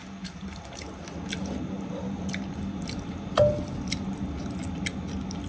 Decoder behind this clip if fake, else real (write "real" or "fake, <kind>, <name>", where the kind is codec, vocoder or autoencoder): real